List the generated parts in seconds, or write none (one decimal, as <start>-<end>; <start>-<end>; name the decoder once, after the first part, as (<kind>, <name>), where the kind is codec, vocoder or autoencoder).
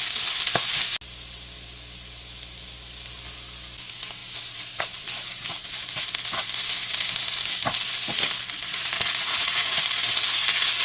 8.7-9.8 (vocoder, Vocos)